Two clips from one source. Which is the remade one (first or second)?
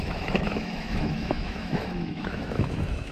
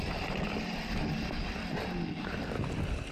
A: first